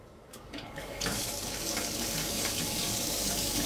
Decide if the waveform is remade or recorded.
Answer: remade